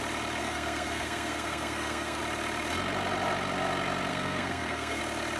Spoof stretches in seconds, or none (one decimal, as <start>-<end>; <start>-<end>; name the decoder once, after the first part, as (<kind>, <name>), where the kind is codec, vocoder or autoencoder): 0.4-2.2 (codec, SNAC); 4.1-5.0

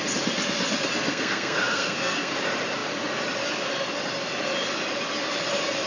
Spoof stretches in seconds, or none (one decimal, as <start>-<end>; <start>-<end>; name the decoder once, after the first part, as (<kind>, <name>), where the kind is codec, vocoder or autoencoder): 1.1-2.3 (codec, SNAC)

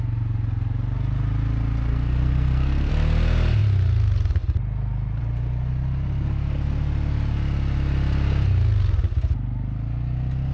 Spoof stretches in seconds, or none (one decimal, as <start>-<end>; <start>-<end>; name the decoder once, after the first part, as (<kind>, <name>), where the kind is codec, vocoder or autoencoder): 1.9-2.9 (codec, SNAC)

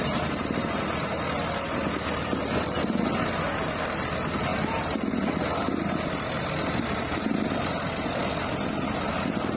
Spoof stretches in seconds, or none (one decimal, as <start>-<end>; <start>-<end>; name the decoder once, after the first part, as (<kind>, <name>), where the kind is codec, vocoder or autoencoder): none

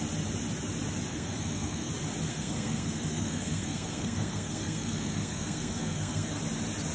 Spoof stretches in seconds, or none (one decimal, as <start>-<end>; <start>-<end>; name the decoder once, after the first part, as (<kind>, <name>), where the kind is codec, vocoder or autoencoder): 1.1-1.9 (codec, SNAC); 2.3-6.4

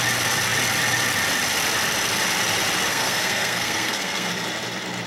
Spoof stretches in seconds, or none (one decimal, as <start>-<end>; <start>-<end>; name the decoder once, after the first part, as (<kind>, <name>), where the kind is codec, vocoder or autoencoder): 2.9-4.3 (codec, SNAC)